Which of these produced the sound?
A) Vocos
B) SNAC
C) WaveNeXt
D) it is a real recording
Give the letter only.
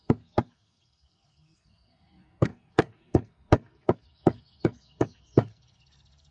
B